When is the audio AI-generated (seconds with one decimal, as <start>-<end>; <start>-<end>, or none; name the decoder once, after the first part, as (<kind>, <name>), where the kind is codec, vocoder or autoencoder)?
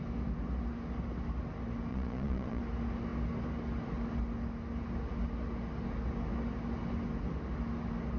1.9-2.6 (vocoder, Vocos)